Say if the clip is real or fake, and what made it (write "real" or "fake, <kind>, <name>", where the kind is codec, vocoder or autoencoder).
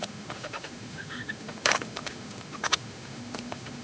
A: fake, autoencoder, DAC-VAE